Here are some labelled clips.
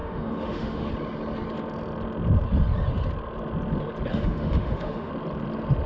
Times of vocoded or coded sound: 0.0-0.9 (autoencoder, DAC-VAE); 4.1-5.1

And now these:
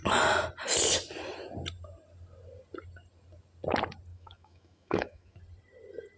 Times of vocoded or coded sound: 4.1-5.4 (autoencoder, DAC-VAE)

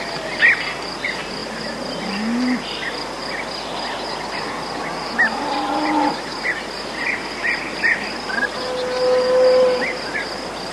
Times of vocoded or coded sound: none

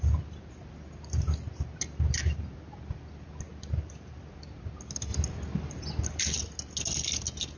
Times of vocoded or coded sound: none

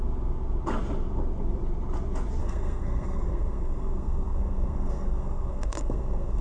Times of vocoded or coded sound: 2.4-6.4 (codec, SNAC)

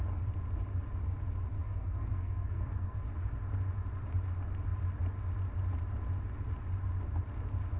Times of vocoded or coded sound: 1.6-3.0 (codec, SNAC)